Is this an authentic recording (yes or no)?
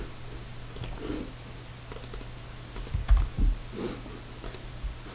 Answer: yes